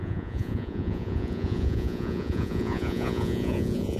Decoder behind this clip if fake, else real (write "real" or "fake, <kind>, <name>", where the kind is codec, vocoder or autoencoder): fake, vocoder, Vocos